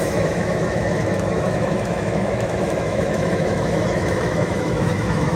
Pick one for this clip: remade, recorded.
remade